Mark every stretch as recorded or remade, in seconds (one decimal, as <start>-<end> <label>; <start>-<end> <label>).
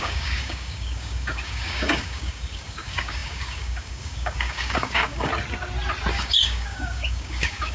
0.0-5.3 remade; 5.3-6.1 recorded; 6.1-7.7 remade